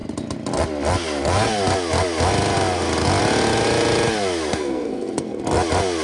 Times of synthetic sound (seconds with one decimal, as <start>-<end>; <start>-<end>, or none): 4.5-5.4